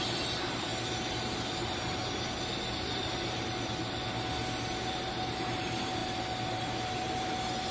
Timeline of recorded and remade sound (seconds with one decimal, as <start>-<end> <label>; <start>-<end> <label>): 0.0-0.7 remade; 0.7-4.8 recorded; 4.8-6.0 remade; 6.0-6.6 recorded; 6.6-7.7 remade

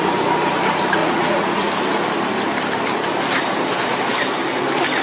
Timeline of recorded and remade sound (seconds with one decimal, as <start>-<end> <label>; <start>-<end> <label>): 0.0-1.0 recorded; 1.0-1.7 remade; 1.7-5.0 recorded